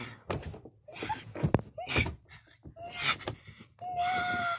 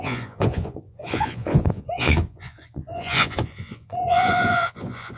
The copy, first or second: second